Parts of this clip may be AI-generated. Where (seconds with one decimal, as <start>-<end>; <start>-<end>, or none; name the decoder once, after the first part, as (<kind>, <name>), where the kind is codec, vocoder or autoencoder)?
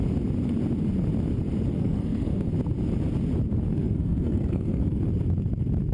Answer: 1.7-2.5 (codec, SNAC); 3.7-5.0